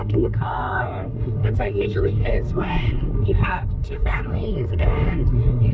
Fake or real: fake